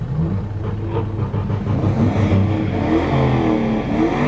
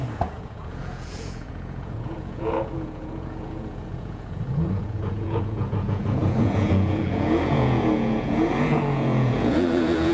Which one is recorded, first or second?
first